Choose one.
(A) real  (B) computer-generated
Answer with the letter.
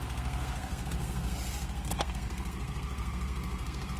B